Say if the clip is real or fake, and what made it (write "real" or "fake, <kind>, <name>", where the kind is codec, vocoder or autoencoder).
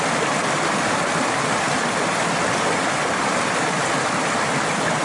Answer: real